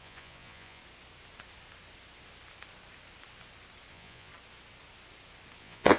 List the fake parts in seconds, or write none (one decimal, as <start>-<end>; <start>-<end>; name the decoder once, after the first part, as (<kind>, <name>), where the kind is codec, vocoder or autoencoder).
0.0-0.8 (vocoder, Vocos); 3.9-4.3; 5.6-6.0